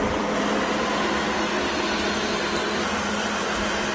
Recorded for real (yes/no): yes